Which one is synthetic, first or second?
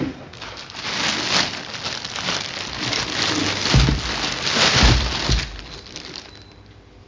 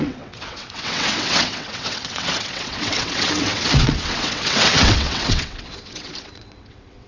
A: second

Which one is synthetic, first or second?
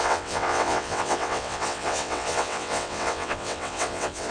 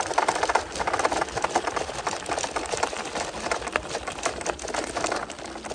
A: first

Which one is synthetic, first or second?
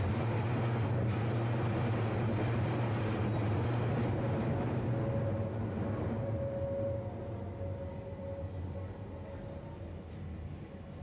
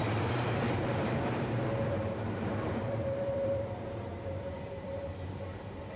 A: second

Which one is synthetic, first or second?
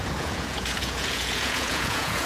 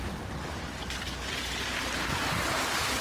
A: first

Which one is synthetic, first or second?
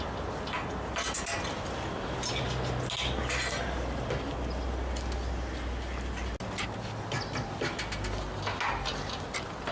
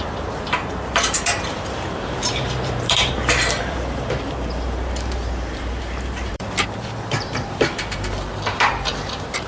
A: second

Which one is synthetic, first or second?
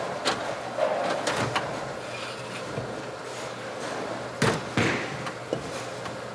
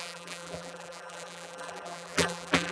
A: second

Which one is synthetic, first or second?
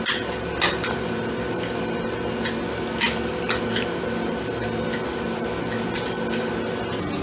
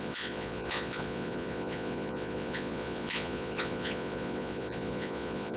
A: second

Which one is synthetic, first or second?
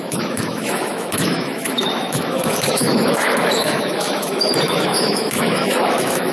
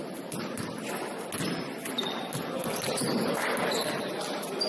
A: first